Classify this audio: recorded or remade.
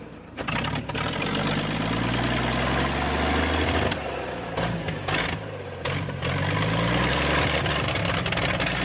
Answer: recorded